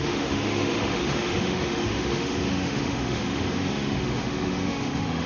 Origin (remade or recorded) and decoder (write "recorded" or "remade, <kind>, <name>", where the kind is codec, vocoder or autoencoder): remade, autoencoder, DAC-VAE